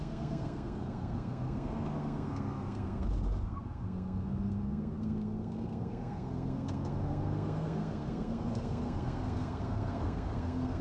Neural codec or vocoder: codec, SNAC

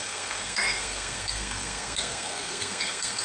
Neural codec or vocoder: codec, SNAC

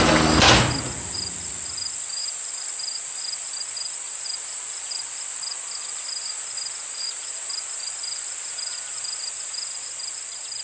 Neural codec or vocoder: none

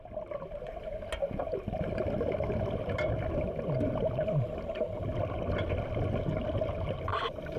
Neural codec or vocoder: none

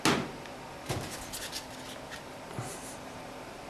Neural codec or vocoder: none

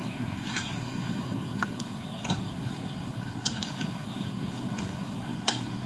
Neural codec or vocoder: codec, SNAC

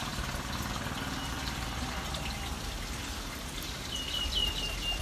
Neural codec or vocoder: none